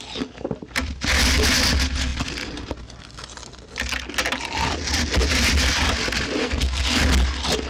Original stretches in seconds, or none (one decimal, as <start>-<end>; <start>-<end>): 0.0-6.4; 7.0-7.7